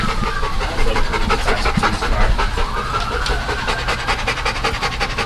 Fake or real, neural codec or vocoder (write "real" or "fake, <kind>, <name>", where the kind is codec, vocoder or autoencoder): real